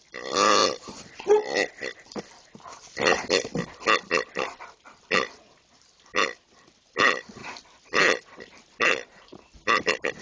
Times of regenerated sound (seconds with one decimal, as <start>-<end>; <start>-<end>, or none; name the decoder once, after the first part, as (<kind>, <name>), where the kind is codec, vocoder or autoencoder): 0.0-0.6 (vocoder, BigVGAN v2); 5.0-10.2